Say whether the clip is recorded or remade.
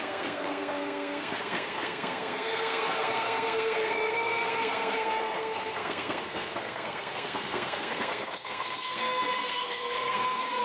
remade